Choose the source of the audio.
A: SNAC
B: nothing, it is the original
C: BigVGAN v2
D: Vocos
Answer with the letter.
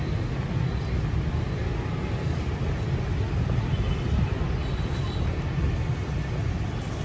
B